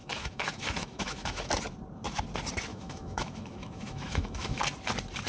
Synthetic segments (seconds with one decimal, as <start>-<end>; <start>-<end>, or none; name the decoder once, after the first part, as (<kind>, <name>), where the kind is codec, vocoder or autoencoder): 0.0-1.5 (autoencoder, DAC-VAE); 2.7-4.6